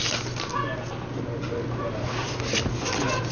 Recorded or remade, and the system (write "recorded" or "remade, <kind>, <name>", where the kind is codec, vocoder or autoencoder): recorded